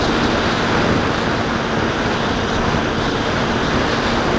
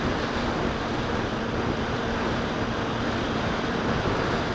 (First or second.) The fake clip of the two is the second